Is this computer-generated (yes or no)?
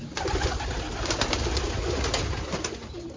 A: no